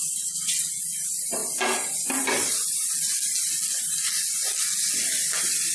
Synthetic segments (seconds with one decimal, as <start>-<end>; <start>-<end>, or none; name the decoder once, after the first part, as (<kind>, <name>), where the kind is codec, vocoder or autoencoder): 0.0-0.8 (vocoder, WaveNeXt)